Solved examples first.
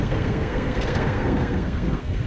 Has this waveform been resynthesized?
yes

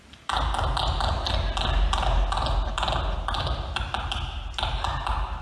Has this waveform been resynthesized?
no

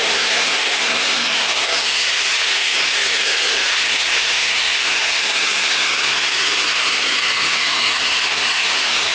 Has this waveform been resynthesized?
yes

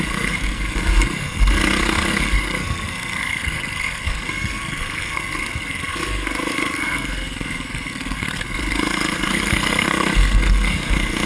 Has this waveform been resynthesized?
yes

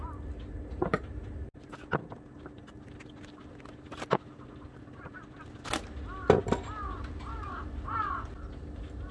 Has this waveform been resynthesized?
no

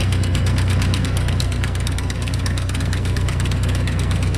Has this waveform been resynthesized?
yes